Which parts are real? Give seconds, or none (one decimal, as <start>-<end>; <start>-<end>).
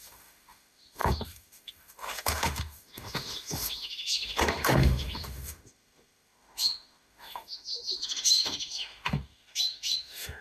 none